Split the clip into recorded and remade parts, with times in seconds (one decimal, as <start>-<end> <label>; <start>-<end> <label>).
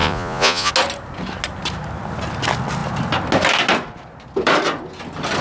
0.0-0.7 remade; 0.7-5.4 recorded